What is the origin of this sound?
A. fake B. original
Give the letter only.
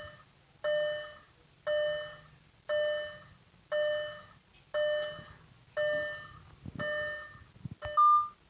B